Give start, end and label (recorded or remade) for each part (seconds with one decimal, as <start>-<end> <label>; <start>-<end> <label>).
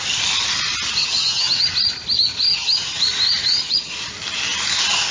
0.0-1.0 recorded; 1.0-1.7 remade; 1.7-2.5 recorded; 2.5-3.0 remade; 3.0-3.4 recorded; 3.4-3.9 remade; 3.9-5.1 recorded